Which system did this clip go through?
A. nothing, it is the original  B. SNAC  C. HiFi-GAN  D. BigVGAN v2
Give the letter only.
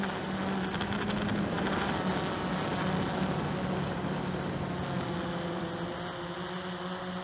A